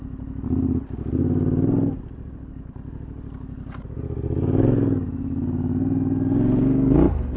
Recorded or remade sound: recorded